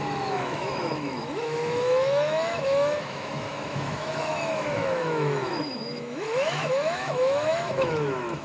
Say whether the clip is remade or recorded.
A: remade